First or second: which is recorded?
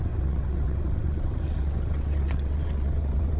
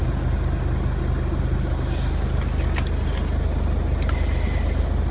second